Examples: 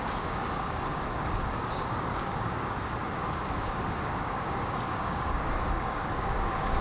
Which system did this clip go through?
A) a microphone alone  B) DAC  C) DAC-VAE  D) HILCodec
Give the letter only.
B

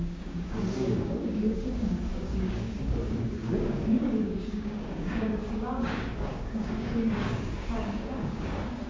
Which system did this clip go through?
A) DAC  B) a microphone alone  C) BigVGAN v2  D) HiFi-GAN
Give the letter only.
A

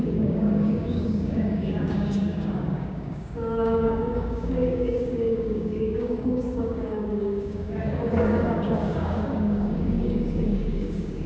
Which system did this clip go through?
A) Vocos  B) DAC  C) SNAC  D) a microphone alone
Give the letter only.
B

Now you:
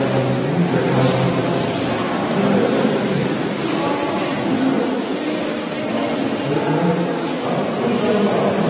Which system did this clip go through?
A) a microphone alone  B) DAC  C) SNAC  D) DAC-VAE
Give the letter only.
A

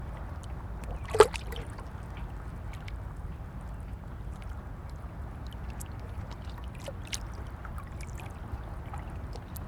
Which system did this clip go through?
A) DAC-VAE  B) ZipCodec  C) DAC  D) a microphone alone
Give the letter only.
D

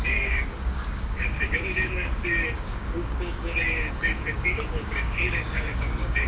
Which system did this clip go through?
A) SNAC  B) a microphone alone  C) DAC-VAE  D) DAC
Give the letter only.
D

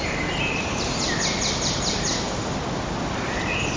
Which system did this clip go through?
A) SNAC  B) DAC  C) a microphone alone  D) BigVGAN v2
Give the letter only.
C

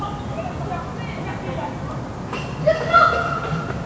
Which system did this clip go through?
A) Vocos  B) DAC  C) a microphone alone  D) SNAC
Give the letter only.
C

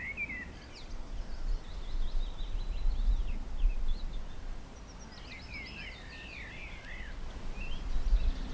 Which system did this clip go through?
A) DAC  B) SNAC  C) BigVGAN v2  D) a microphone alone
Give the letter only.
D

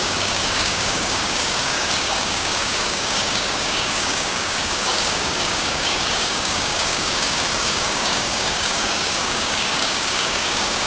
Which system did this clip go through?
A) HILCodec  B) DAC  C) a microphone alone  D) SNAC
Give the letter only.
B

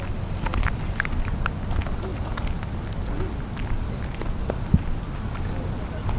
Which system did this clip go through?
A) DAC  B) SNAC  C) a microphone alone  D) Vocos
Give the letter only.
C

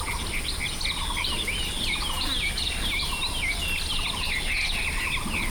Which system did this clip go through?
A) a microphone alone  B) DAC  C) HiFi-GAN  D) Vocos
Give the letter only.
A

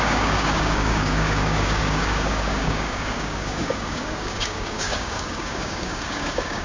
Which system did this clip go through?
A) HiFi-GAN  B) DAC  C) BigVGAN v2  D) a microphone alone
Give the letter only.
B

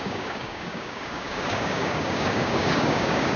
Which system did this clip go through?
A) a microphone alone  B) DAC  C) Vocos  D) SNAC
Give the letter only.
B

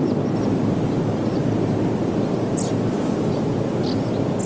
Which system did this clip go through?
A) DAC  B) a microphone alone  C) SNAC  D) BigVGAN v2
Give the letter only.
B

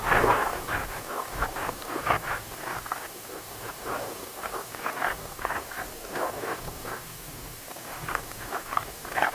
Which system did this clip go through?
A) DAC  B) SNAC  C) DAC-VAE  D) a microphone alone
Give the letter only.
A